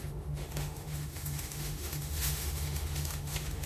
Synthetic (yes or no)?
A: yes